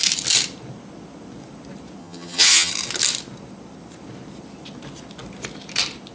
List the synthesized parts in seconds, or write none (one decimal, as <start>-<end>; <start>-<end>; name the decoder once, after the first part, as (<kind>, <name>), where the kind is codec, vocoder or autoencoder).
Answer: 2.0-2.7 (vocoder, HiFi-GAN)